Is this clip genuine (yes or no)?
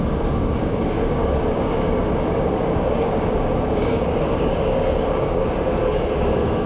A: no